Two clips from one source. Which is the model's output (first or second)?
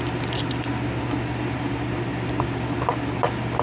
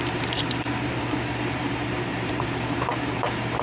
second